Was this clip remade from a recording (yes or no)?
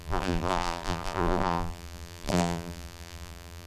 yes